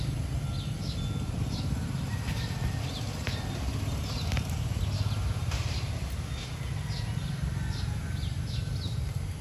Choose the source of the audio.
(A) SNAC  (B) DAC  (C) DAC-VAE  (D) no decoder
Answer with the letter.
D